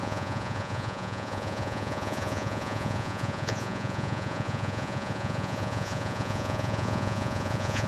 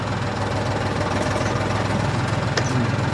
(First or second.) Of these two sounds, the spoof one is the first